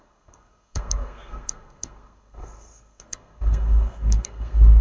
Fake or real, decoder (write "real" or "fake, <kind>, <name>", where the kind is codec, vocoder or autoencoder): fake, codec, SNAC